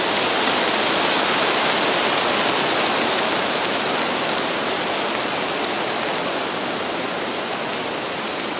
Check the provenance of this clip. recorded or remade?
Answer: recorded